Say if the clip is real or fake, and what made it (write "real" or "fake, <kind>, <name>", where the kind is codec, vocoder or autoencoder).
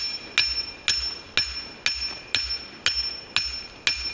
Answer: real